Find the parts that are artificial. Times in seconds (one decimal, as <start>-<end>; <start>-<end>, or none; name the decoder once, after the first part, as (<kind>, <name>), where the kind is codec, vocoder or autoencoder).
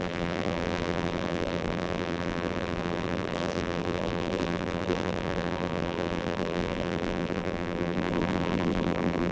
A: 0.0-9.3 (vocoder, BigVGAN v2)